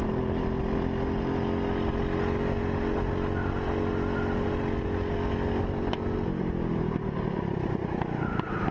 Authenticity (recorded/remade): recorded